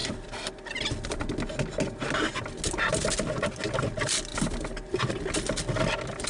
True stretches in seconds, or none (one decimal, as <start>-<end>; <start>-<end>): 0.0-6.3